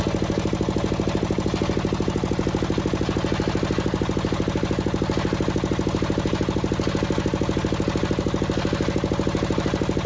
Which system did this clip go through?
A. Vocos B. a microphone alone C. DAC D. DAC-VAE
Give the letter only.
B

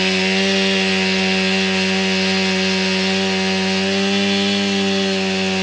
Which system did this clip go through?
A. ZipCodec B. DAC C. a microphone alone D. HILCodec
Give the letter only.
C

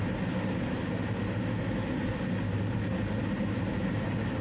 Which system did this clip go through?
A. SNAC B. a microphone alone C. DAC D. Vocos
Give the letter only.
B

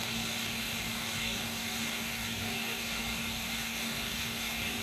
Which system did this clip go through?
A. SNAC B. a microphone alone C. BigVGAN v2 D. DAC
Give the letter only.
D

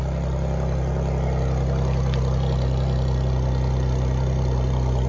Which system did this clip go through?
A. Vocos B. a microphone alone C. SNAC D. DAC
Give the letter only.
B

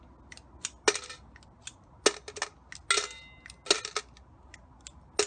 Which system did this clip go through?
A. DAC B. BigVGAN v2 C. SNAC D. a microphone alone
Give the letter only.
D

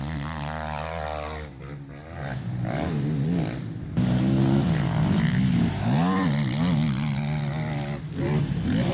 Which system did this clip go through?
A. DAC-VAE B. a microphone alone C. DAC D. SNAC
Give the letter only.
B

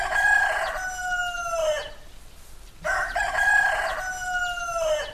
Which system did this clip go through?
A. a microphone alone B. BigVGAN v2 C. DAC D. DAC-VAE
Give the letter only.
A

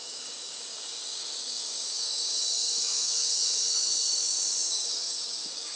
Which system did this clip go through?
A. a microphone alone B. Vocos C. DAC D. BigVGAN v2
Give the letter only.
C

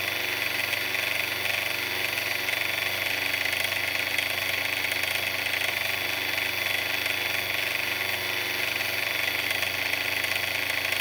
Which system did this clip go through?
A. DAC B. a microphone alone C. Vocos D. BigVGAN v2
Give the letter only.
B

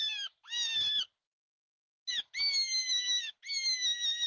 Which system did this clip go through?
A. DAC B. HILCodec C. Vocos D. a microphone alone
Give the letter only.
D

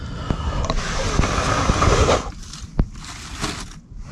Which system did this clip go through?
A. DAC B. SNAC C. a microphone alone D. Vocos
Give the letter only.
C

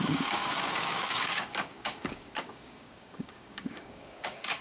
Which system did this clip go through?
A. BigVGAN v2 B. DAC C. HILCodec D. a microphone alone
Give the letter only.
B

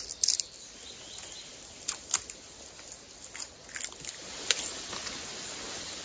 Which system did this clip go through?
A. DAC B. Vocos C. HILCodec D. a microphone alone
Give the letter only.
D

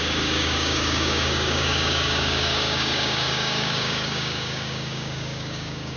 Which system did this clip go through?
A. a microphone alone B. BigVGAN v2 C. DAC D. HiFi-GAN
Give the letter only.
C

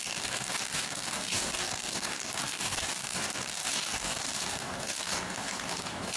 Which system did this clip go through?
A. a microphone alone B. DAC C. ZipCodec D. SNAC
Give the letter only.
B